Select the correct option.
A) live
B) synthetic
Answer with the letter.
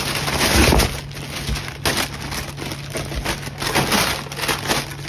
A